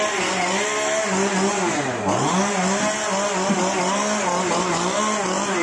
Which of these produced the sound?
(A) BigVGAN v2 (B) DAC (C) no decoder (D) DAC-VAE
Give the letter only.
C